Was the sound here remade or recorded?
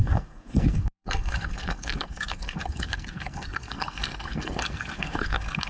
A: remade